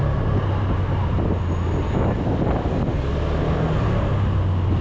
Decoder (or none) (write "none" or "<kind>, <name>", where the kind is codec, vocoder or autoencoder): none